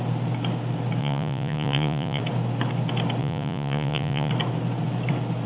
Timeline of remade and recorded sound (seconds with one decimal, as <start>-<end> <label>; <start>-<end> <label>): 0.0-1.0 recorded; 1.0-2.2 remade; 2.2-3.2 recorded; 3.2-4.3 remade; 4.3-5.5 recorded

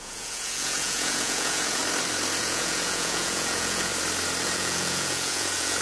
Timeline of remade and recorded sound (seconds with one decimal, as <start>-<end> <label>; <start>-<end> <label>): 0.0-1.8 remade; 1.8-2.4 recorded; 2.4-3.9 remade; 3.9-4.4 recorded; 4.4-5.8 remade

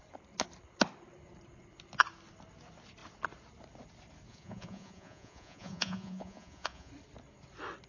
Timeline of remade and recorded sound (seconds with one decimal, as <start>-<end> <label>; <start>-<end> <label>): 0.0-4.3 recorded; 4.3-6.9 remade; 6.9-7.9 recorded

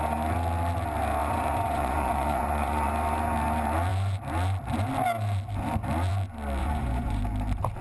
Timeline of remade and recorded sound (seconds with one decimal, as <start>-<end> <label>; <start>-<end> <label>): 0.0-1.2 recorded; 1.2-2.9 remade; 2.9-6.6 recorded; 6.6-7.2 remade; 7.2-7.8 recorded